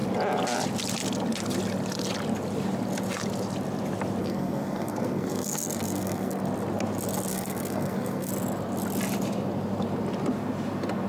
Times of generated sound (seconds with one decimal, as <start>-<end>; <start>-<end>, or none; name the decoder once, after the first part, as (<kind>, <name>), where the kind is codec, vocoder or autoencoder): 4.2-6.4 (codec, SNAC); 7.3-8.3